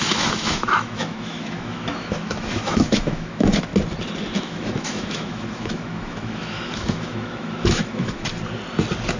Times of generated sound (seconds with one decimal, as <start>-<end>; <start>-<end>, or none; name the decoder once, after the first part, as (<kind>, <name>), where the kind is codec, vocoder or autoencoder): 0.0-3.7 (autoencoder, DAC-VAE); 4.4-8.3